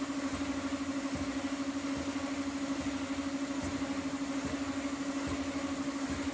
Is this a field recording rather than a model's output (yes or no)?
yes